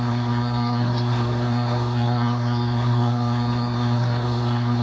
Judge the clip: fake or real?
fake